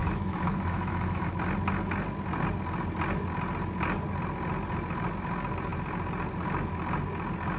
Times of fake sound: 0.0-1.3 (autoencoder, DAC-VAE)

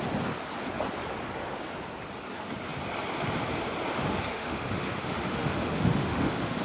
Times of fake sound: 4.3-6.6 (autoencoder, DAC-VAE)

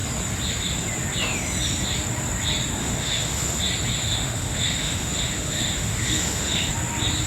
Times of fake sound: 2.8-3.6 (autoencoder, DAC-VAE); 4.0-6.7

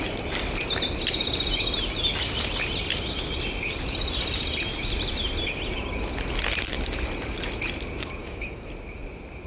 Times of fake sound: 8.2-8.7 (autoencoder, DAC-VAE)

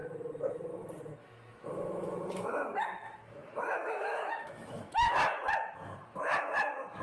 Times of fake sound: 1.2-7.0 (autoencoder, DAC-VAE)